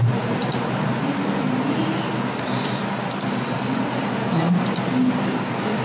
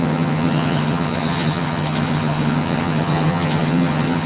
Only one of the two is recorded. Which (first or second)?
first